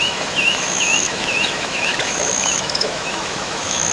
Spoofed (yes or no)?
yes